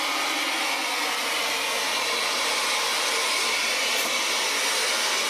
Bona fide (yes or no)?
yes